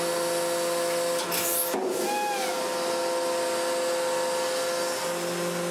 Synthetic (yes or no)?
no